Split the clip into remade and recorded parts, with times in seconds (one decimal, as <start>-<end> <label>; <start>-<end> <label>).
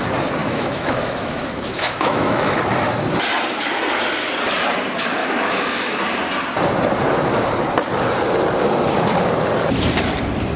0.0-0.4 recorded; 0.4-2.6 remade; 2.6-5.2 recorded; 5.2-6.0 remade; 6.0-10.6 recorded